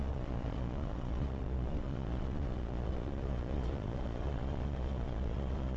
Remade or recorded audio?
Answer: remade